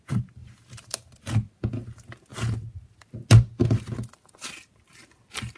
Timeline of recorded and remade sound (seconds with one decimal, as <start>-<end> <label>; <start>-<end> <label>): 0.0-0.4 recorded; 0.4-1.3 remade; 1.3-5.6 recorded